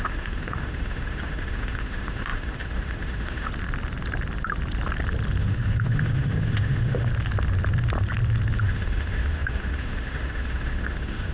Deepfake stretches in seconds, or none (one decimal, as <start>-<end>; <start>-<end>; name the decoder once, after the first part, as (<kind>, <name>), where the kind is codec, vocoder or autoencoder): 0.0-3.5 (autoencoder, DAC-VAE); 5.4-7.1; 8.6-11.3